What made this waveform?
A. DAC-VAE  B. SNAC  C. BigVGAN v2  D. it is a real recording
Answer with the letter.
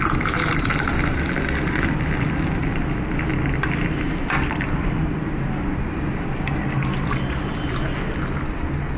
C